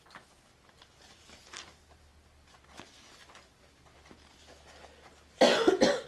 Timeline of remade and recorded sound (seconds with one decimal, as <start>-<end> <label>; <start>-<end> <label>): 0.0-6.1 recorded